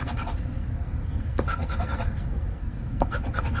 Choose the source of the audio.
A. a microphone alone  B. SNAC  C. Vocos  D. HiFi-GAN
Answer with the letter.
B